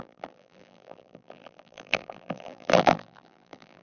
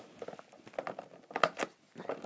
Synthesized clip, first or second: first